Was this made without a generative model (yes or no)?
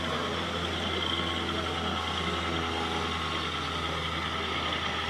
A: yes